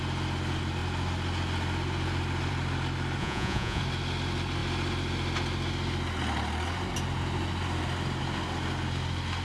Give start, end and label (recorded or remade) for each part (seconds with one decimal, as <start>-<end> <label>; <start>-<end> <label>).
0.0-3.2 recorded; 3.2-3.8 remade; 3.8-9.4 recorded